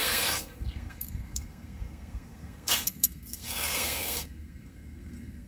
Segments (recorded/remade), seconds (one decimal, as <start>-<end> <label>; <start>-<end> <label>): 0.0-5.5 remade